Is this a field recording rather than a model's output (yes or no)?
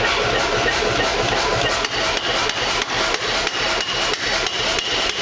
yes